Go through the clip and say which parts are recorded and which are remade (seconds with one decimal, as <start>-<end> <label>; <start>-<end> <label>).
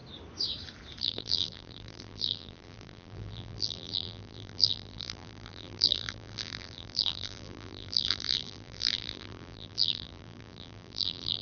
0.0-1.0 recorded; 1.0-11.4 remade